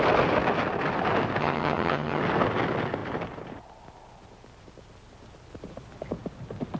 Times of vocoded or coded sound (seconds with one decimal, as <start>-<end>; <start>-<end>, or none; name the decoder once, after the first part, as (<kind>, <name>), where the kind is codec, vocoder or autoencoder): 1.4-2.2 (vocoder, HiFi-GAN)